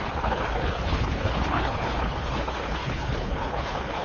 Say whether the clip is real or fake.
fake